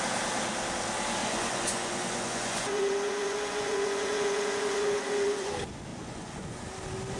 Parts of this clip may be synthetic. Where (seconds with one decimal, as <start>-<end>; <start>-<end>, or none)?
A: 1.2-5.5; 5.9-6.6